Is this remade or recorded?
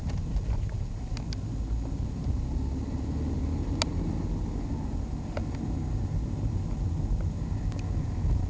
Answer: recorded